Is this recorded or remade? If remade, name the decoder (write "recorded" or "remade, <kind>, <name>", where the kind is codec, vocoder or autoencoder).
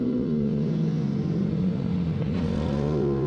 remade, vocoder, Vocos